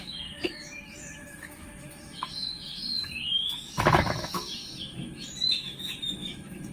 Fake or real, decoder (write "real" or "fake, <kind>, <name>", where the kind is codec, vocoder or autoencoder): fake, autoencoder, DAC-VAE